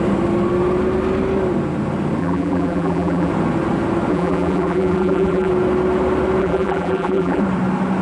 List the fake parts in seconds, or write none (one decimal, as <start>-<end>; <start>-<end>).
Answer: 2.2-3.3; 4.1-5.5; 6.4-7.4